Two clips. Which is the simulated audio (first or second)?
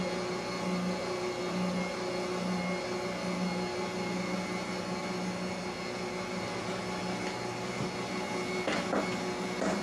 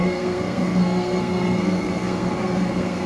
second